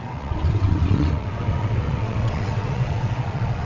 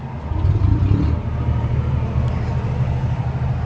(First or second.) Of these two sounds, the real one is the second